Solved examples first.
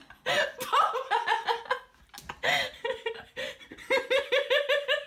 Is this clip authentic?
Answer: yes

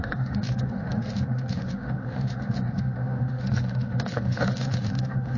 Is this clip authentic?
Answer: no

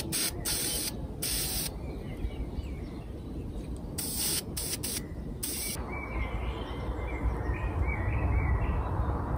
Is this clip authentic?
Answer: yes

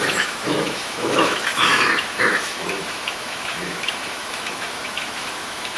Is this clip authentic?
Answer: no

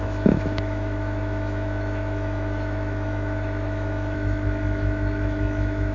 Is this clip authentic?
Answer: no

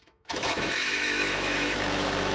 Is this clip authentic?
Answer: no